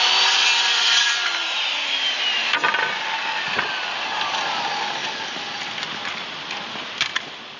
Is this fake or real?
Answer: real